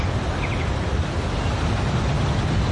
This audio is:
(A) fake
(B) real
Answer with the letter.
B